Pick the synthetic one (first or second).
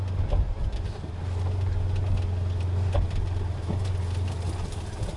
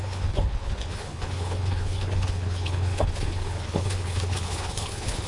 second